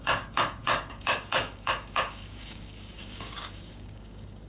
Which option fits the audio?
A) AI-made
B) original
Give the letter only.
A